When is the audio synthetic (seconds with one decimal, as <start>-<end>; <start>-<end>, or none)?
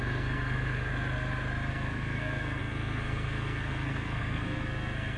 0.0-0.9; 1.7-5.2